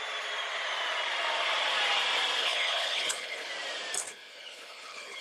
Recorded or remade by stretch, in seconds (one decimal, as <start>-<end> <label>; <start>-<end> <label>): 0.0-2.4 recorded; 2.4-3.5 remade; 3.5-4.0 recorded; 4.0-5.2 remade